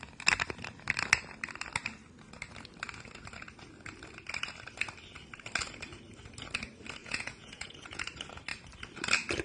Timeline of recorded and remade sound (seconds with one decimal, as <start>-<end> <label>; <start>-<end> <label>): 0.0-7.0 recorded; 7.0-8.0 remade; 8.0-9.4 recorded